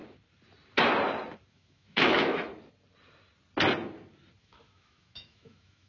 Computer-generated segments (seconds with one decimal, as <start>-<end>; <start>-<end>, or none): 1.5-2.5; 4.4-5.9